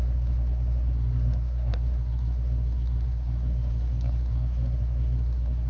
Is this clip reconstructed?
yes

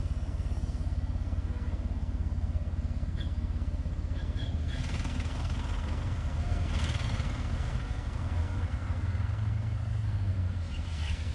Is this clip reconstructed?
yes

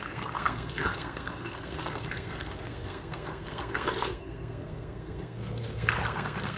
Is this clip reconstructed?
yes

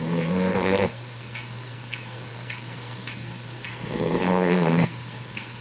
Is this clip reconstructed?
yes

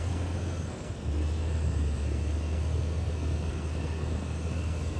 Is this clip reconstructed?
yes